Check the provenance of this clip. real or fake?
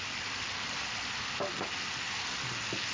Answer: real